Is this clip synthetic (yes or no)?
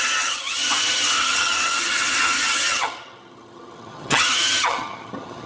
yes